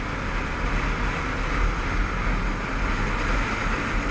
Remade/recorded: recorded